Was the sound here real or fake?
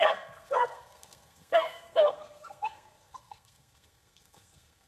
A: fake